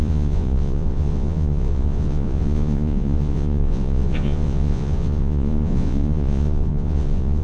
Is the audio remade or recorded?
remade